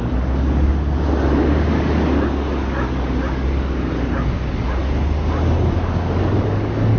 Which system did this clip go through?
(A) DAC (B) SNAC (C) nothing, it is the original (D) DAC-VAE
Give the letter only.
A